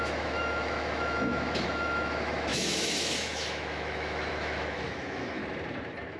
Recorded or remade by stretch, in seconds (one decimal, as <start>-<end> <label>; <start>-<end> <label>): 0.0-5.4 remade; 5.4-6.2 recorded